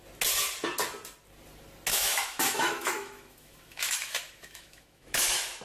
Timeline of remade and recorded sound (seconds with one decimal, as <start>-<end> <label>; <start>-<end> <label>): 0.0-1.9 recorded; 1.9-5.6 remade